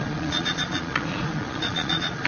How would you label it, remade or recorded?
remade